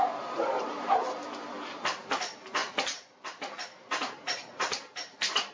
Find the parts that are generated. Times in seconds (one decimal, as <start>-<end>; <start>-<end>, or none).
none